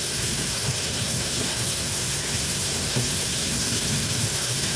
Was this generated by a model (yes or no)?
yes